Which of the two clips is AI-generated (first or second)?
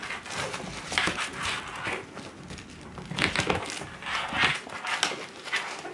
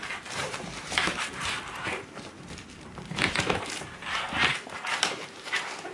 second